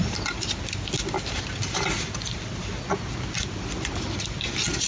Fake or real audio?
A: real